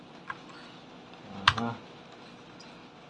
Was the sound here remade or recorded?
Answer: recorded